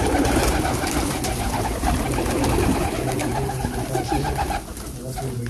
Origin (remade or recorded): recorded